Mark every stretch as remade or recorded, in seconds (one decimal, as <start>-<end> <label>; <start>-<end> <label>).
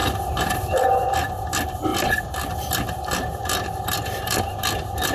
0.0-0.8 remade; 0.8-1.9 recorded; 1.9-4.5 remade; 4.5-5.1 recorded